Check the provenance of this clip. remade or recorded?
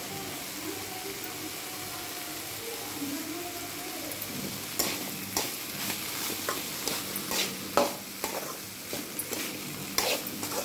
recorded